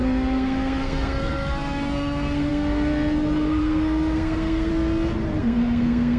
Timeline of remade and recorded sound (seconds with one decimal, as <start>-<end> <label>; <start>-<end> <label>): 0.0-4.7 remade; 4.7-5.4 recorded; 5.4-6.2 remade